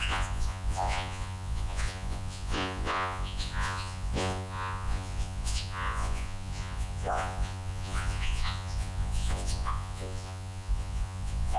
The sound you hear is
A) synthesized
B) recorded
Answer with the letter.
A